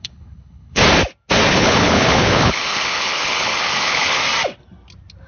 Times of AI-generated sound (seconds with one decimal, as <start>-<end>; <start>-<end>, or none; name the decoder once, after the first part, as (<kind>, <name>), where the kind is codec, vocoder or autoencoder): 0.0-0.8 (codec, HILCodec); 1.5-4.2